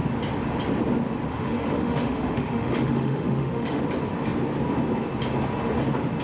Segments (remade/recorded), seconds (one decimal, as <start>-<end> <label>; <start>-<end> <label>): 0.0-1.3 recorded; 1.3-3.8 remade; 3.8-6.2 recorded